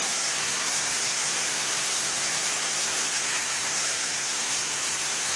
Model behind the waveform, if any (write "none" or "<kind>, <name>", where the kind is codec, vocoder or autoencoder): codec, SNAC